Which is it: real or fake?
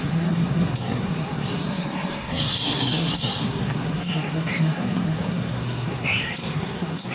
fake